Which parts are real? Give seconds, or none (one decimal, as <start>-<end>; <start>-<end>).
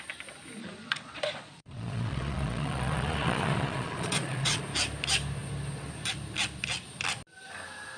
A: 0.0-0.6; 4.6-8.0